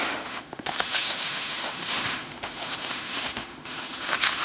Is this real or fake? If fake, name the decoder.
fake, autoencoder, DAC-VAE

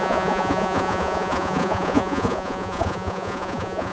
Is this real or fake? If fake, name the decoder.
fake, vocoder, Vocos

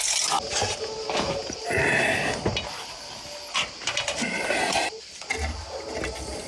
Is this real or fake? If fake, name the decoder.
real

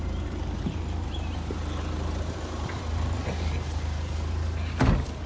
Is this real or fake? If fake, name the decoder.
fake, vocoder, BigVGAN v2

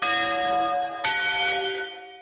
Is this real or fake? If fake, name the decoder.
real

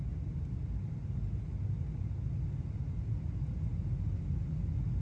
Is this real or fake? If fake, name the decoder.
real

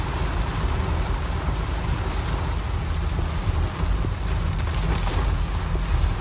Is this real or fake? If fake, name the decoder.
real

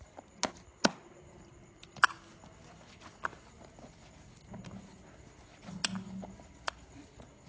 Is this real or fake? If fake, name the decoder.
real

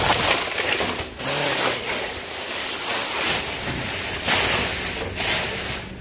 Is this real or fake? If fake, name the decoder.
real